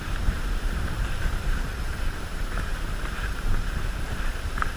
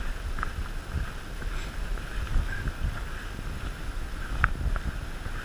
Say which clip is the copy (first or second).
first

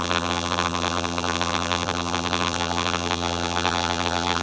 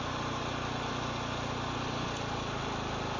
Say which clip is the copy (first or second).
first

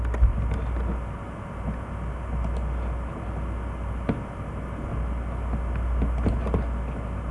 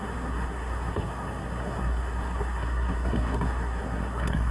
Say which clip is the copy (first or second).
second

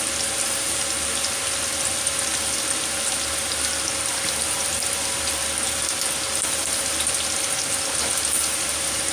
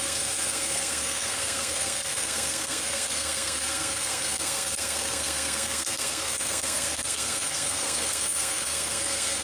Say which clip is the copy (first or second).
second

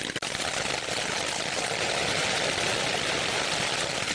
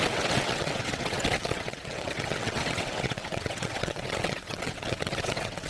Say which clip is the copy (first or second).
second